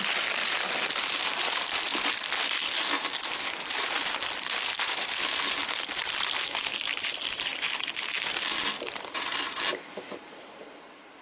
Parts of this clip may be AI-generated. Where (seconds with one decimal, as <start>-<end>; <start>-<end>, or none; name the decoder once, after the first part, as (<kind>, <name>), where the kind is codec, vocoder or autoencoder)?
none